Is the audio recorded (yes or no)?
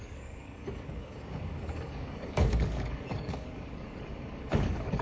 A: no